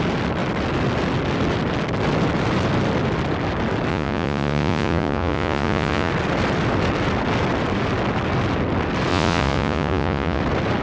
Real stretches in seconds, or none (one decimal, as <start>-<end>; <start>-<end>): 0.0-3.9; 6.1-9.1; 10.4-10.8